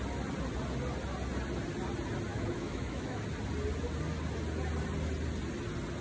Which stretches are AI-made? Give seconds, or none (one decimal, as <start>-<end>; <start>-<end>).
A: 2.3-3.2